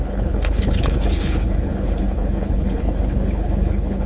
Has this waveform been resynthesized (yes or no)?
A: yes